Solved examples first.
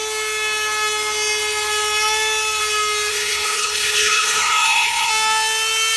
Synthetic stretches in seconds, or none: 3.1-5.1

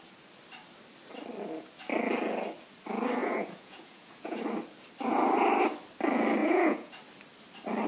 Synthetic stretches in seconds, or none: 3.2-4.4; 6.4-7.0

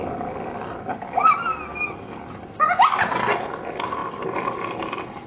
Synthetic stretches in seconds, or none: none